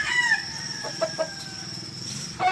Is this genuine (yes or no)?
yes